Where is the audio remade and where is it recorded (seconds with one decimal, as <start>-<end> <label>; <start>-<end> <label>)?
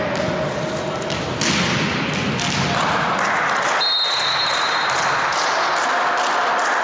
0.0-6.8 recorded